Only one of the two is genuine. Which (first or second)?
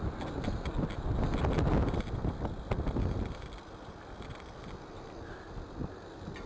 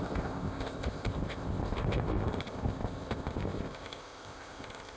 first